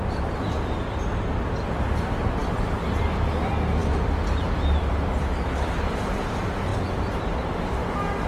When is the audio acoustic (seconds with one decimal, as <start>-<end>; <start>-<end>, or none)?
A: 0.0-3.8; 5.4-8.3